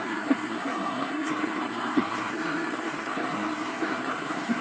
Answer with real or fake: fake